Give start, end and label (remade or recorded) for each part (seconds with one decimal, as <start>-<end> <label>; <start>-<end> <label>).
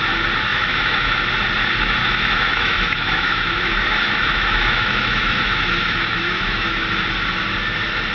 0.0-0.5 recorded; 0.5-1.2 remade; 1.2-2.0 recorded; 2.0-6.8 remade; 6.8-8.1 recorded